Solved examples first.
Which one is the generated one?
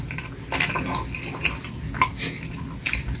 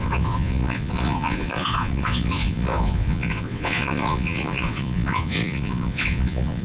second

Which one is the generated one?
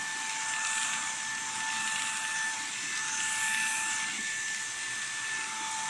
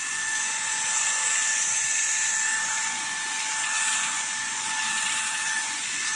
second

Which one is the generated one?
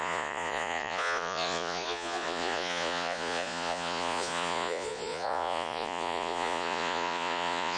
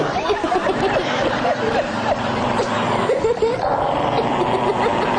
first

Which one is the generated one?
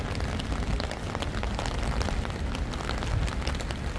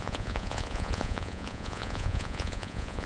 second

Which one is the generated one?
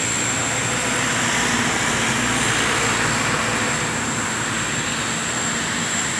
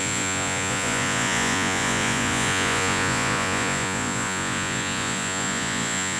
second